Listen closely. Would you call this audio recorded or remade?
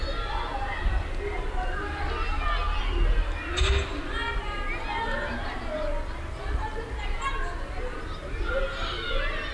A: recorded